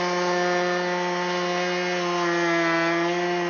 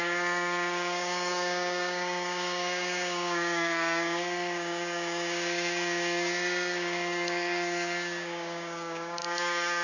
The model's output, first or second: second